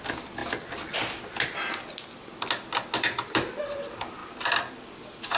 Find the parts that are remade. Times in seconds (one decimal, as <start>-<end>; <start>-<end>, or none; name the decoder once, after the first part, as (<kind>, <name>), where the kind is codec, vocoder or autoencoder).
none